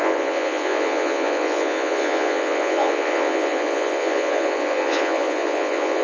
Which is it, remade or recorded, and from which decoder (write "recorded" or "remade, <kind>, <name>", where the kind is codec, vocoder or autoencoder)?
remade, vocoder, Vocos